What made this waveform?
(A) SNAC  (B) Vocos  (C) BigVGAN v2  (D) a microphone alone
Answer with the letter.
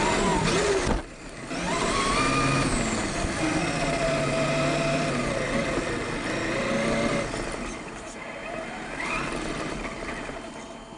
D